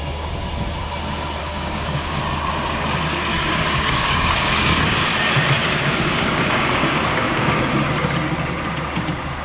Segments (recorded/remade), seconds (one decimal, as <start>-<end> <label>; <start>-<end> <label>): 0.0-1.4 recorded; 1.4-2.2 remade; 2.2-3.3 recorded; 3.3-5.1 remade; 5.1-5.6 recorded; 5.6-7.5 remade; 7.5-9.4 recorded